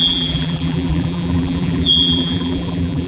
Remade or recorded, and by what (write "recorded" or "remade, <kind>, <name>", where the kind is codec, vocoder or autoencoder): remade, vocoder, BigVGAN v2